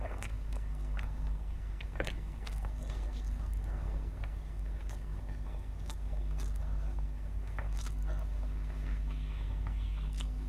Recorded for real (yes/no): no